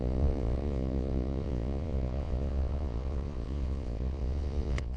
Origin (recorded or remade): remade